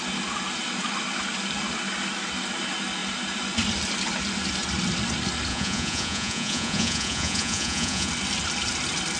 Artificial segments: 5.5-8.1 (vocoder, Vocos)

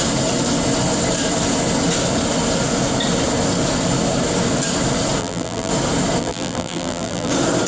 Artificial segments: 5.2-5.7 (vocoder, BigVGAN v2); 6.2-7.3

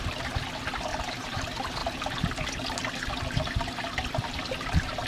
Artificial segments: 0.9-1.4 (vocoder, BigVGAN v2)

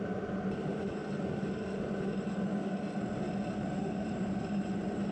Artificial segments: 0.0-1.0 (vocoder, BigVGAN v2); 4.1-5.1

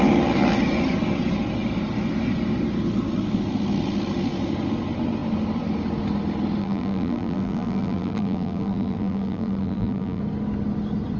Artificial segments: 6.6-10.2 (vocoder, BigVGAN v2)